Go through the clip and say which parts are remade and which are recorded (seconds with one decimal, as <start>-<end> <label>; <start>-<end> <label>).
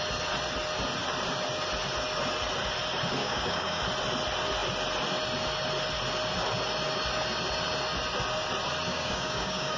0.0-3.2 recorded; 3.2-3.8 remade; 3.8-8.9 recorded; 8.9-9.8 remade